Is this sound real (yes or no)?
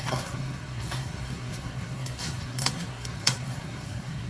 no